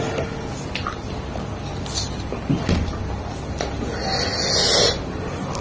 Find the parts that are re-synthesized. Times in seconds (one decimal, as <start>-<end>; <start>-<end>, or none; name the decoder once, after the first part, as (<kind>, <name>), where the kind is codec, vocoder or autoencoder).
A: none